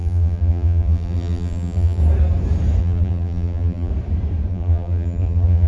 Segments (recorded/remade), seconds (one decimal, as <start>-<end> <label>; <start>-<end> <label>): 0.0-2.0 remade; 2.0-2.8 recorded; 2.8-3.9 remade; 3.9-4.5 recorded; 4.5-5.7 remade